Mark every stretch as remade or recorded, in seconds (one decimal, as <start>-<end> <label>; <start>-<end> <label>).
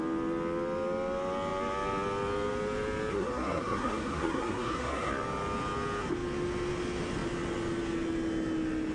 0.0-3.1 recorded; 3.1-5.1 remade; 5.1-8.9 recorded